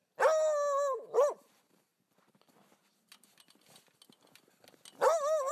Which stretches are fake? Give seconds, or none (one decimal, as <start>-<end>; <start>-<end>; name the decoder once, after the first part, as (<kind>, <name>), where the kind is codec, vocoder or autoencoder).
none